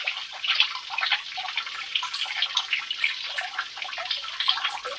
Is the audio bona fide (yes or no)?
yes